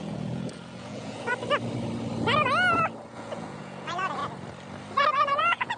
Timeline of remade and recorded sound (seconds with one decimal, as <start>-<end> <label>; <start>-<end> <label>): 0.0-1.3 remade; 1.3-3.1 recorded; 3.1-4.2 remade; 4.2-5.1 recorded; 5.1-5.8 remade